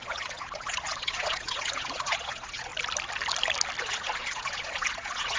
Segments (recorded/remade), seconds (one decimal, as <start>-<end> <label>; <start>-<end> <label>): 0.0-2.7 remade; 2.7-3.8 recorded; 3.8-5.4 remade